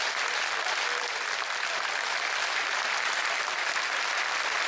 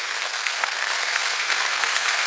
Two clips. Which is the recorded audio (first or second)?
first